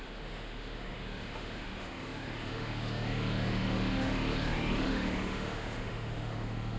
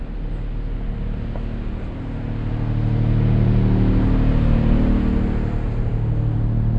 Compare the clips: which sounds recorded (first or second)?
second